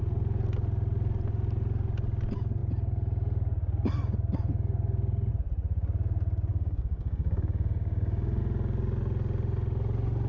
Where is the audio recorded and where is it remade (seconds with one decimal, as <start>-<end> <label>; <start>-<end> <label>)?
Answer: 0.0-6.5 recorded; 6.5-8.4 remade; 8.4-10.3 recorded